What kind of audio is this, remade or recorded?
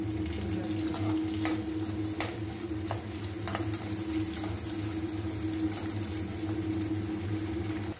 recorded